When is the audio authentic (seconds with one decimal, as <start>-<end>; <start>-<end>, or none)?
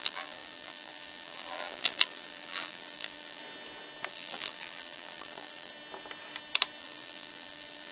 3.4-4.1; 5.7-6.8